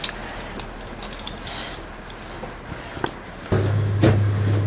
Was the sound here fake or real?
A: real